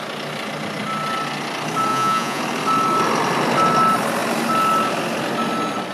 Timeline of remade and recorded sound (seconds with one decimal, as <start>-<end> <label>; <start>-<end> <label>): 0.0-1.9 recorded; 1.9-2.4 remade; 2.4-5.9 recorded